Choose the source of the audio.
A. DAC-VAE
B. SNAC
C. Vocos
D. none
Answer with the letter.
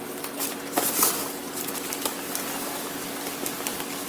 D